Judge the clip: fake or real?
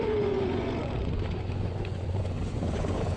fake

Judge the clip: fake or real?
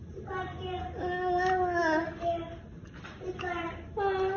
real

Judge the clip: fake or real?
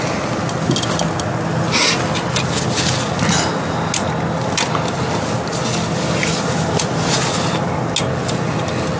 real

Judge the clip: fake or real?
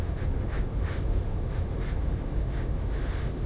fake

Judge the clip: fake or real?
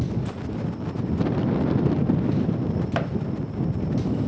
real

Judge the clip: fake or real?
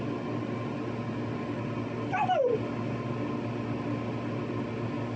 real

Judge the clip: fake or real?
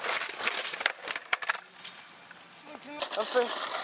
real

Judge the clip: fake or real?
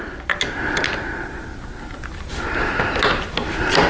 real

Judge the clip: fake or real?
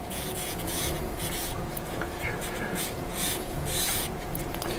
fake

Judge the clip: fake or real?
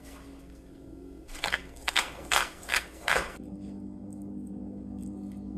fake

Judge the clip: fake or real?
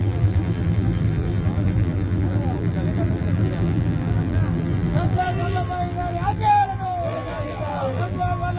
fake